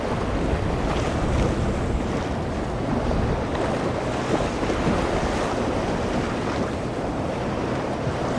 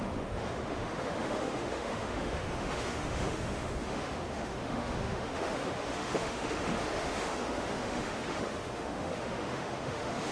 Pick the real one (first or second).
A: first